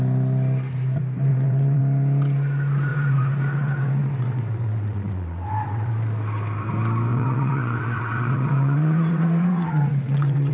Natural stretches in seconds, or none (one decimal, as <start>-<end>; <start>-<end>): 0.0-1.3; 1.8-2.9; 5.9-7.1